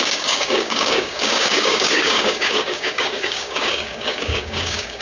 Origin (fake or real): fake